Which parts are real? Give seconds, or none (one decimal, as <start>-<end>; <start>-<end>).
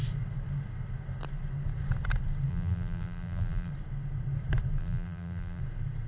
0.0-2.5; 3.7-4.8; 5.6-6.1